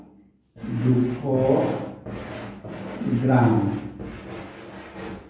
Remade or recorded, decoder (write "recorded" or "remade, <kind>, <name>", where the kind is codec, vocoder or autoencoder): recorded